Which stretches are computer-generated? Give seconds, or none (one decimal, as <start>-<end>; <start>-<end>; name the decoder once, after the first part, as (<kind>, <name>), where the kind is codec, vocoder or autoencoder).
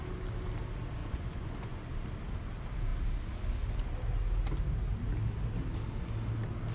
1.0-1.8 (vocoder, Vocos)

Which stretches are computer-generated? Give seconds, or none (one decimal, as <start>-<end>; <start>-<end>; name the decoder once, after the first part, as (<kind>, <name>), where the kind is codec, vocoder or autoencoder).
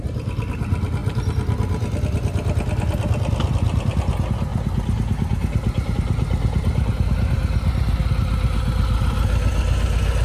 none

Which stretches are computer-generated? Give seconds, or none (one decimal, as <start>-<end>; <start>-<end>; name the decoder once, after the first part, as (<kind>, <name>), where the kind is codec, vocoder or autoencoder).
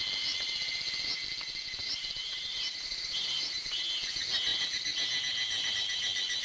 1.8-3.8 (vocoder, BigVGAN v2)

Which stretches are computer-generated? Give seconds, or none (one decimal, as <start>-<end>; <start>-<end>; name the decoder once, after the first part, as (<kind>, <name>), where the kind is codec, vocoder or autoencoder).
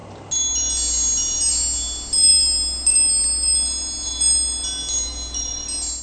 none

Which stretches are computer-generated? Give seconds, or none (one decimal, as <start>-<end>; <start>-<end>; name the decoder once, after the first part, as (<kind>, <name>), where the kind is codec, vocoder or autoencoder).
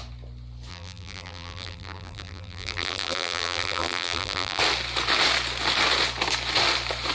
0.7-4.6 (vocoder, BigVGAN v2)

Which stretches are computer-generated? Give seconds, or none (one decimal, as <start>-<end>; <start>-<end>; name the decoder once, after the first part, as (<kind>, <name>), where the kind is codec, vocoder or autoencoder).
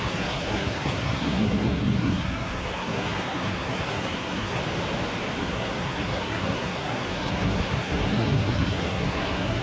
0.0-4.6 (codec, SNAC); 5.4-9.6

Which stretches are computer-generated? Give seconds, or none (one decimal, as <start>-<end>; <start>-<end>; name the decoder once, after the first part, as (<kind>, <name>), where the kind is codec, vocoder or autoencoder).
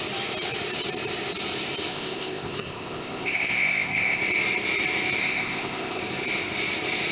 1.9-4.2 (codec, ZipCodec); 5.2-6.0